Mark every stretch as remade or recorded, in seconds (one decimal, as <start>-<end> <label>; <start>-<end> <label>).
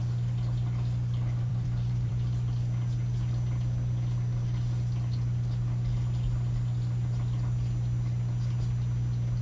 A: 0.0-1.5 recorded; 1.5-2.1 remade; 2.1-9.4 recorded